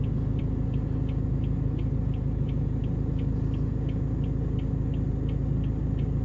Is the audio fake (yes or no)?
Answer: no